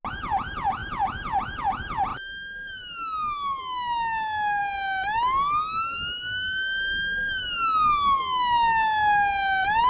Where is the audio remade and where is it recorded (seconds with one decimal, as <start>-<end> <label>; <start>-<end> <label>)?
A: 0.0-9.9 recorded